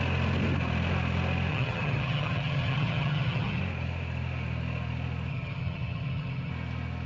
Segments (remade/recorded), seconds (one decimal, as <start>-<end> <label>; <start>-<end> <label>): 0.0-1.5 recorded; 1.5-3.6 remade; 3.6-5.3 recorded; 5.3-6.5 remade; 6.5-7.1 recorded